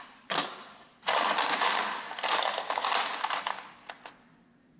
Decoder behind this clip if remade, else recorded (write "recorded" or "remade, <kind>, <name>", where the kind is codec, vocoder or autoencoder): recorded